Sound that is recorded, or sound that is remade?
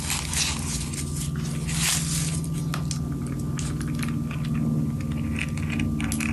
recorded